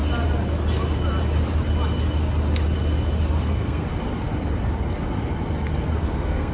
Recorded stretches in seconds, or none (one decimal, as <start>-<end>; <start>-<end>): 0.0-3.4; 3.9-6.0